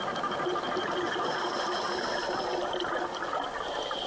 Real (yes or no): yes